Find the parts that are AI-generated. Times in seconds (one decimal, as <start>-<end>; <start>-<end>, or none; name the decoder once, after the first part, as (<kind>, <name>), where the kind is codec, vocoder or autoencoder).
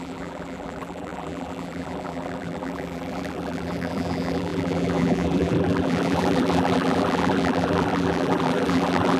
0.0-9.2 (vocoder, BigVGAN v2)